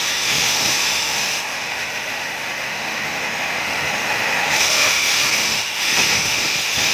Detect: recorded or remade remade